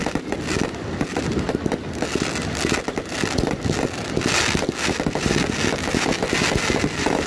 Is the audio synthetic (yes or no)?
no